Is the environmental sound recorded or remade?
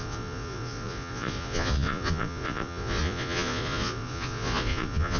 remade